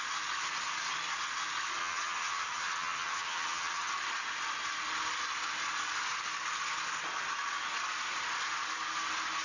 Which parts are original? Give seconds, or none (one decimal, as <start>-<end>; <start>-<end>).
0.0-1.8; 3.9-9.4

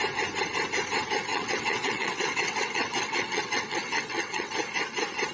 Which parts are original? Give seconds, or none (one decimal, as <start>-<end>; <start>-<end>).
0.0-1.3; 4.5-5.3

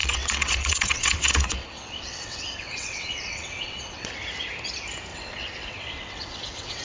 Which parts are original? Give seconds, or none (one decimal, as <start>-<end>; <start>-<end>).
4.1-5.1

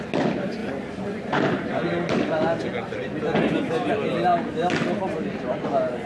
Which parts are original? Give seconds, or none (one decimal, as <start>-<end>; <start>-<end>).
0.0-0.6; 2.1-4.3